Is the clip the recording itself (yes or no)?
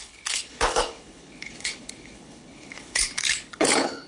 no